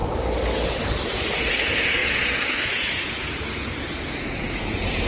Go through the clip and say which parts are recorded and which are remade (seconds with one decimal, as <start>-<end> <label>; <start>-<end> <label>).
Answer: 0.0-1.5 recorded; 1.5-5.1 remade